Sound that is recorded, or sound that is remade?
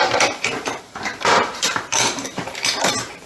remade